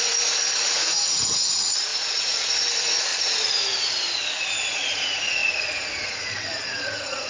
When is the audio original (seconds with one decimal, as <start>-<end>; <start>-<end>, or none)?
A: 3.1-4.2

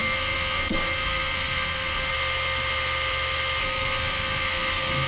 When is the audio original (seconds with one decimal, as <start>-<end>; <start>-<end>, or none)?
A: 2.1-3.6

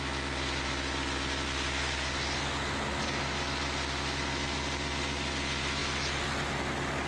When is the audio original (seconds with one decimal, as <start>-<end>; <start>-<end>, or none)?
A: 0.0-7.1

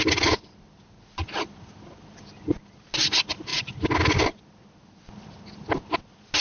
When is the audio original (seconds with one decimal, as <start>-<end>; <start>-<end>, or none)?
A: 0.0-6.4

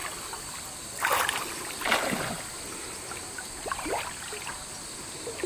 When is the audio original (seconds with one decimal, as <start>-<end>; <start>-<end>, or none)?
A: 0.0-5.5

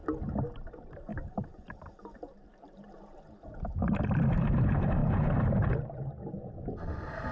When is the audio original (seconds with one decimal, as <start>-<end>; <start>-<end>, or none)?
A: 0.0-0.6; 5.0-6.2

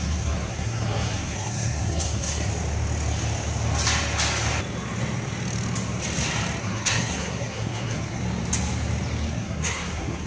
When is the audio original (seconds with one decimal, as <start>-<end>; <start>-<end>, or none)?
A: 2.5-6.6; 8.2-9.3